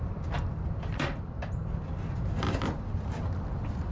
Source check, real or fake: real